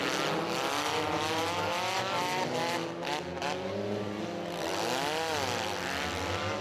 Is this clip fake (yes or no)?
no